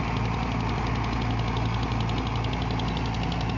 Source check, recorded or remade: recorded